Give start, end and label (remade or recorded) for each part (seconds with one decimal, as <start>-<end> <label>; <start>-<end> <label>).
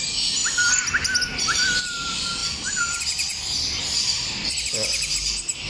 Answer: 0.0-0.4 remade; 0.4-1.8 recorded; 1.8-5.7 remade